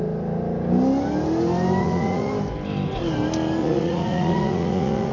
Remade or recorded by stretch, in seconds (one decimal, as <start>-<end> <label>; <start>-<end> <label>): 0.0-1.8 recorded; 1.8-2.3 remade; 2.3-3.6 recorded; 3.6-5.1 remade